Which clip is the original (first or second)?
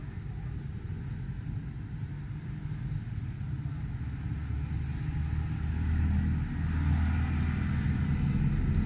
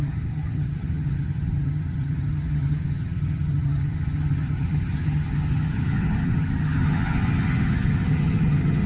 first